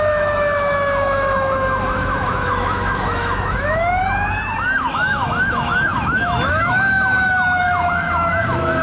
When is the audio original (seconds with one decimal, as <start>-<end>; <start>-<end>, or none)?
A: 4.0-4.8